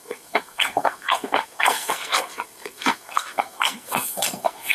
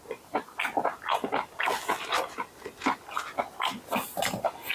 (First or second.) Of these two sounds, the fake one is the first